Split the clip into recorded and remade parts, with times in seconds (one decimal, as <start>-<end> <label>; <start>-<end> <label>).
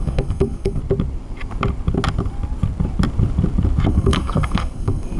0.0-0.8 remade; 0.8-3.9 recorded; 3.9-5.2 remade